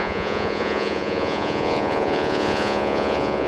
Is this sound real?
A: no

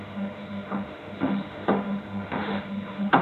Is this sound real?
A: no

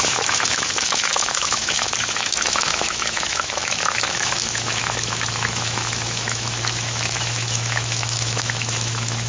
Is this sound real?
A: no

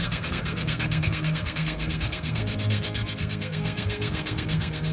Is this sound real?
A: no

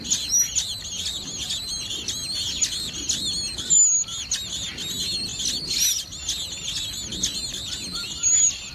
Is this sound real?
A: yes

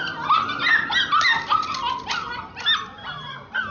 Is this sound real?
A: yes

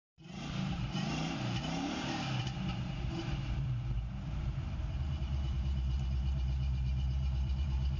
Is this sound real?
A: no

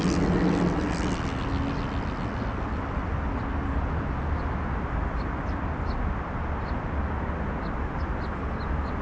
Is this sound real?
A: yes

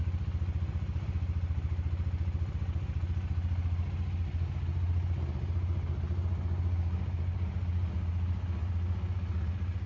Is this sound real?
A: yes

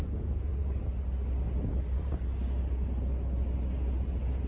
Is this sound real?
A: yes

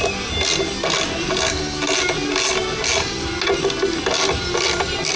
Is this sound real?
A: yes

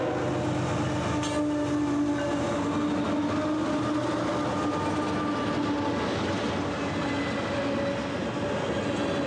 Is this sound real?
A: yes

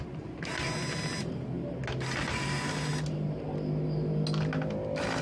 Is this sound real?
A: yes